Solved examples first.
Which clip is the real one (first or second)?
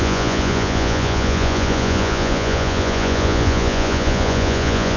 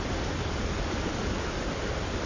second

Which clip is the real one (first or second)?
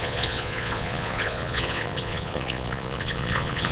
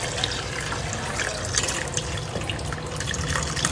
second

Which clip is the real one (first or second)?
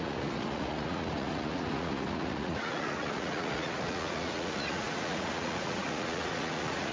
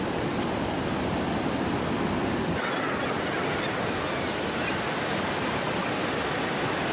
second